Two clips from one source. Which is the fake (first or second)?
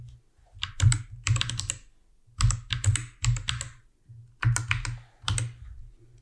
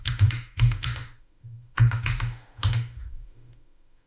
second